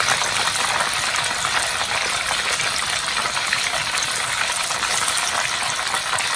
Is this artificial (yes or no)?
no